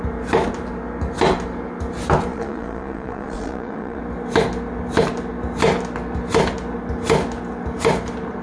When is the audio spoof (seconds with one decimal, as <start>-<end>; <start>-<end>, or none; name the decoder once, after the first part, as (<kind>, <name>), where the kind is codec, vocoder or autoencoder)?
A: 2.3-4.0 (vocoder, Vocos)